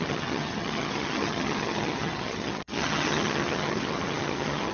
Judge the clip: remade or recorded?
remade